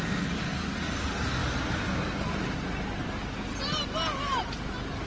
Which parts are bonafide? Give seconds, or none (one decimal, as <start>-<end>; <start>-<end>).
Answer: 0.0-5.1

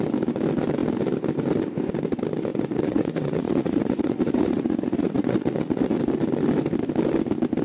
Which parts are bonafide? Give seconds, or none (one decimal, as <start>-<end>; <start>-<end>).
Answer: 0.0-2.5; 6.0-7.6

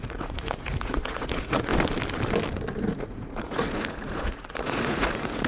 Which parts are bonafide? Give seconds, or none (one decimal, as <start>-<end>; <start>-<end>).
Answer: 1.7-2.8

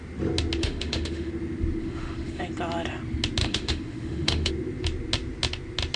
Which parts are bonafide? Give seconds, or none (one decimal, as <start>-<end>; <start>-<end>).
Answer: 0.0-0.6; 1.3-1.8; 2.4-3.4; 4.5-6.0